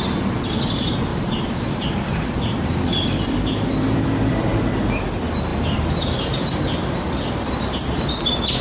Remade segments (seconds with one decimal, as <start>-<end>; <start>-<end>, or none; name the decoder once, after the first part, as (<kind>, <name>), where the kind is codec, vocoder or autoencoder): 1.1-4.8 (vocoder, BigVGAN v2); 5.5-7.6